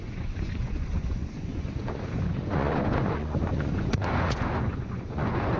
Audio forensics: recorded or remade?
remade